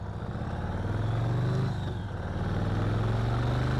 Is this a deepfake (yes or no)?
no